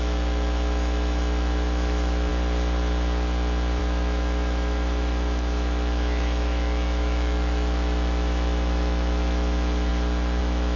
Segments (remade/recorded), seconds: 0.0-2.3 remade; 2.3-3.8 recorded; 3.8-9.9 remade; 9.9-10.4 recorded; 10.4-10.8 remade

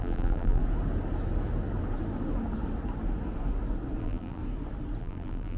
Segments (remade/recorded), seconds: 0.0-0.6 remade; 0.6-4.0 recorded; 4.0-4.4 remade; 4.4-5.0 recorded; 5.0-5.6 remade

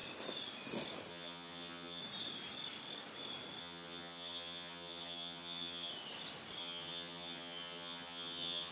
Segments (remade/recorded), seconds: 0.0-1.1 recorded; 1.1-2.0 remade; 2.0-3.6 recorded; 3.6-5.9 remade; 5.9-6.6 recorded; 6.6-8.7 remade

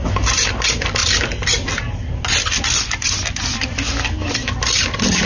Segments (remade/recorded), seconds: 0.0-5.3 recorded

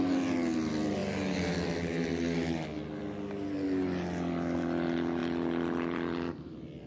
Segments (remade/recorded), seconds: 0.0-5.2 recorded; 5.2-6.9 remade

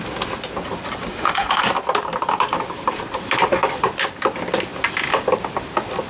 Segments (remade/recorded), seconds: 0.0-1.1 recorded; 1.1-1.6 remade; 1.6-6.1 recorded

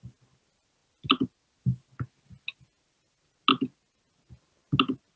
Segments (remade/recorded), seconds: 0.0-5.2 recorded